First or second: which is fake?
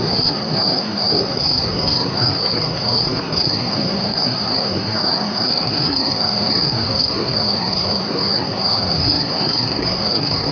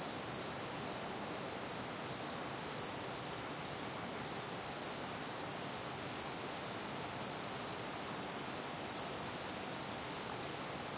first